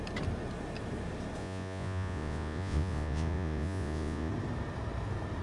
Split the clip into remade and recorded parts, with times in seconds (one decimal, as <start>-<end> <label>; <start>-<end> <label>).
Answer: 0.0-1.4 recorded; 1.4-4.3 remade; 4.3-5.4 recorded